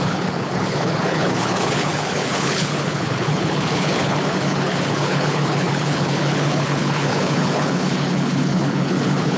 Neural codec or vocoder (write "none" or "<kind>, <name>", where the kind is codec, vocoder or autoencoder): codec, HILCodec